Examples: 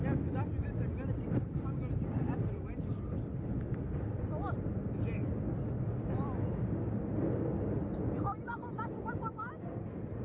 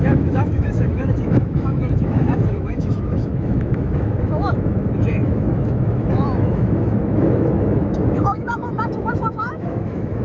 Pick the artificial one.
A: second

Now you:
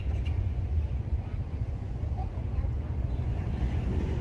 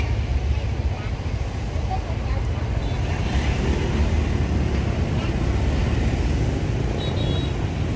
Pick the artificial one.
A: first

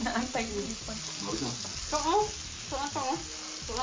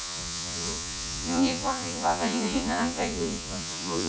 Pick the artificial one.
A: second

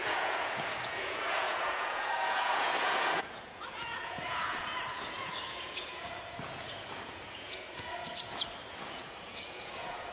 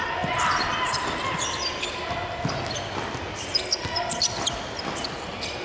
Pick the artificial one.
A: first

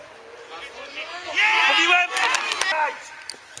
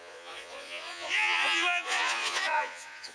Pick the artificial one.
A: second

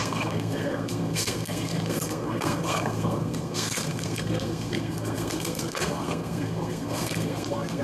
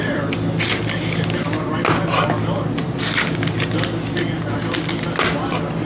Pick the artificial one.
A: first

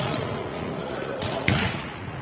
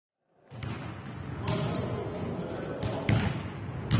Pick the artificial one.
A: first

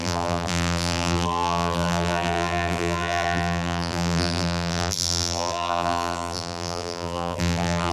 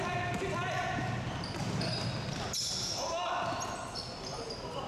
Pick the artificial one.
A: first